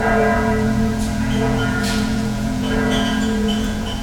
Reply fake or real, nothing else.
fake